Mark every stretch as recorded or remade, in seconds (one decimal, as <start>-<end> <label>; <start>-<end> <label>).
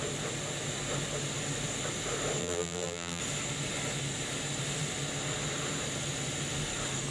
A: 0.0-2.4 recorded; 2.4-3.2 remade; 3.2-7.1 recorded